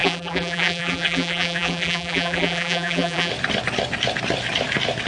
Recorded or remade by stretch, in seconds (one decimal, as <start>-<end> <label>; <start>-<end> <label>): 0.0-3.3 remade; 3.3-5.1 recorded